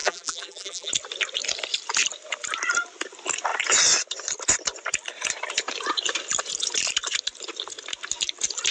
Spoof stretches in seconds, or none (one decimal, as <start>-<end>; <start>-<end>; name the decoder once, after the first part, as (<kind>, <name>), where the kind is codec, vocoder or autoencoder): 0.0-0.9 (vocoder, BigVGAN v2)